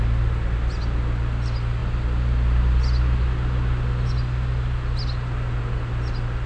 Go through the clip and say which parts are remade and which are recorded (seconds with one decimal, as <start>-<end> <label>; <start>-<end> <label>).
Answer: 0.0-6.5 recorded